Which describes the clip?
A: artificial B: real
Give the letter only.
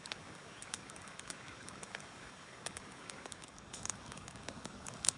A